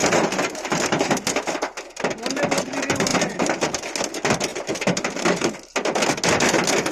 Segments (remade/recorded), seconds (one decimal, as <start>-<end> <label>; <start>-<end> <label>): 0.0-1.2 remade; 1.2-3.1 recorded; 3.1-3.6 remade; 3.6-4.5 recorded; 4.5-5.5 remade; 5.5-6.9 recorded